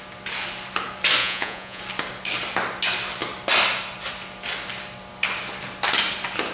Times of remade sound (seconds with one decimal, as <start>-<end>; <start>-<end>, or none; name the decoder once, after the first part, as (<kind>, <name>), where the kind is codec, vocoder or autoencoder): 1.2-1.8 (vocoder, Vocos)